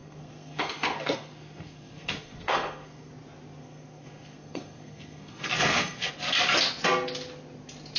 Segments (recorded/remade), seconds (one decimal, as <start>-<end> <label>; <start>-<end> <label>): 0.0-3.1 remade; 3.1-3.6 recorded; 3.6-6.1 remade; 6.1-8.0 recorded